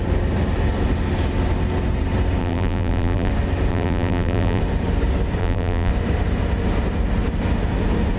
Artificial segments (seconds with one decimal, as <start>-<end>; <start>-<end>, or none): 2.4-3.3; 3.7-4.6; 5.4-5.9